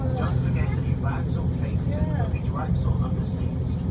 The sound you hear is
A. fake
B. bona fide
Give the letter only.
B